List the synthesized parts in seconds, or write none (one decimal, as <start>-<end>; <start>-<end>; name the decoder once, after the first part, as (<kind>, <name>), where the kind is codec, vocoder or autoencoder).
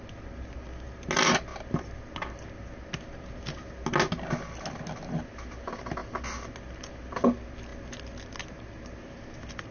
none